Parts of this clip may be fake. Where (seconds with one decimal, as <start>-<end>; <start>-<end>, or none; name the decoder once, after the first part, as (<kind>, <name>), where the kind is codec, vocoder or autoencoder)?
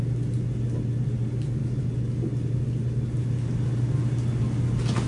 none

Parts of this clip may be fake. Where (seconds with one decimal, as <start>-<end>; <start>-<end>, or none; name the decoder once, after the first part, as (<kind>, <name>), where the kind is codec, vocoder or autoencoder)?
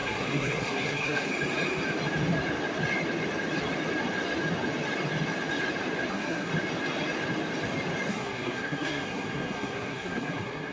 0.0-1.3 (codec, SNAC); 6.1-6.5; 8.1-10.7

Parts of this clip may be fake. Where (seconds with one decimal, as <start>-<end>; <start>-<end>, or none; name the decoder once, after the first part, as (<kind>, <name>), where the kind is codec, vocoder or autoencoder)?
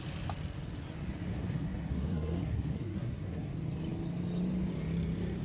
1.3-3.5 (codec, SNAC)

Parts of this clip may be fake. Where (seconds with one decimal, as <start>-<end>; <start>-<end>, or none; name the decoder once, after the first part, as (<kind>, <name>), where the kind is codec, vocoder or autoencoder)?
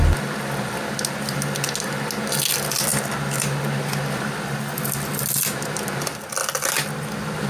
none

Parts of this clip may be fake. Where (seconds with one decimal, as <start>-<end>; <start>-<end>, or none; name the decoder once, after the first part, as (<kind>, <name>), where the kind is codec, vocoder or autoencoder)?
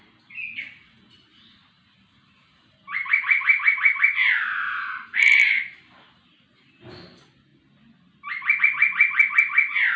1.3-5.5 (vocoder, BigVGAN v2)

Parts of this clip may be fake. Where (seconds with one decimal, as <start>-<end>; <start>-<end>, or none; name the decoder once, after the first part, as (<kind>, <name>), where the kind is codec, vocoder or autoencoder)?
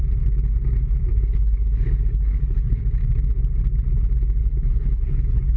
1.1-2.8 (codec, HILCodec); 4.4-5.6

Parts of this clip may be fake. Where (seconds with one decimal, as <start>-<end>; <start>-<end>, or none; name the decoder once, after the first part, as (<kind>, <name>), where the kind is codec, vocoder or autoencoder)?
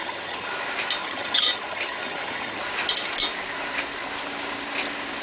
0.0-0.5 (vocoder, HiFi-GAN); 1.0-2.6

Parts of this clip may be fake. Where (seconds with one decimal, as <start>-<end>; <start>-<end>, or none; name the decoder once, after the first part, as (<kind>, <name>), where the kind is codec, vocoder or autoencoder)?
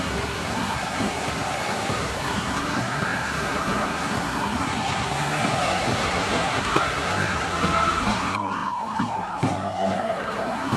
0.0-10.8 (codec, SNAC)